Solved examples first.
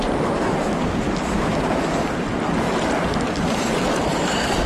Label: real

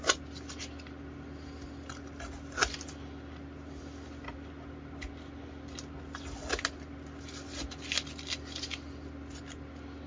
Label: real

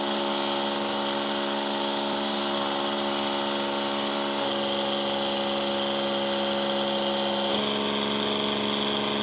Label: real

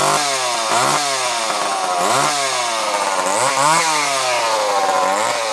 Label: real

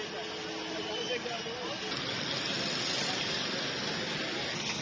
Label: real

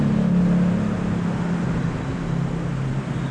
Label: real